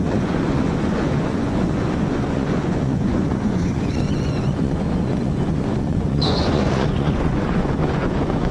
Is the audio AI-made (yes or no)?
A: yes